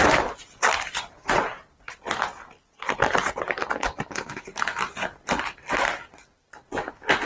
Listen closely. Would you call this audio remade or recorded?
recorded